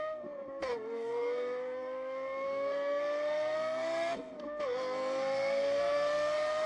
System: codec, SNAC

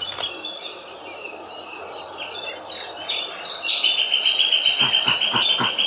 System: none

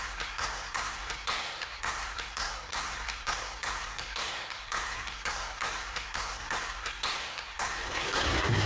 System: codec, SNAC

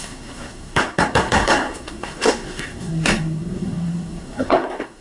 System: codec, SNAC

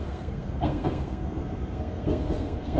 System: codec, SNAC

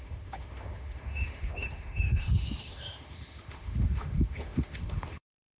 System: autoencoder, DAC-VAE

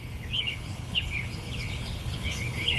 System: codec, HILCodec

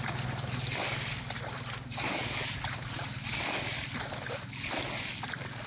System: none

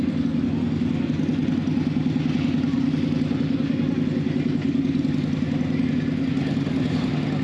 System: none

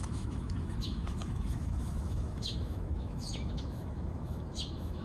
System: autoencoder, DAC-VAE